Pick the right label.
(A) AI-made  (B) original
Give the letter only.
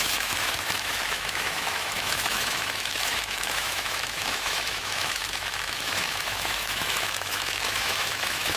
A